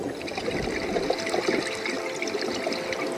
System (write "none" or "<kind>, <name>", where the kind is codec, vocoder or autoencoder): none